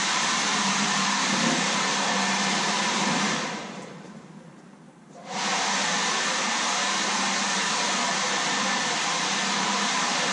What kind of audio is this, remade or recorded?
remade